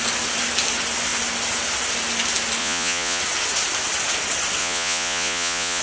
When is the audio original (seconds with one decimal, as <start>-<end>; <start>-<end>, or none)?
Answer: 0.0-2.6; 3.2-4.6